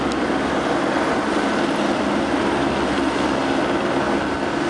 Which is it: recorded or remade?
recorded